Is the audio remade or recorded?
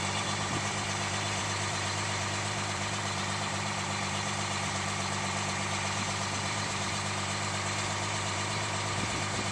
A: remade